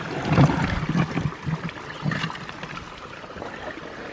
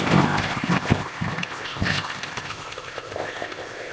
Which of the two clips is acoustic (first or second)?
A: first